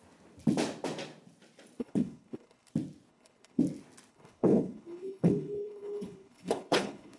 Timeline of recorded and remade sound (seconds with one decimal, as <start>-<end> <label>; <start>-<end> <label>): 0.0-1.8 recorded; 1.8-2.7 remade; 2.7-3.1 recorded; 3.1-3.6 remade; 3.6-4.1 recorded; 4.1-7.2 remade